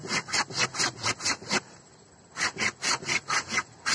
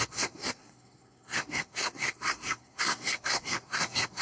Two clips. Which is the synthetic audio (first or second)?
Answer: second